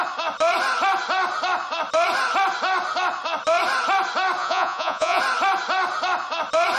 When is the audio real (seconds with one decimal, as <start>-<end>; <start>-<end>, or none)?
0.0-4.4; 5.2-6.8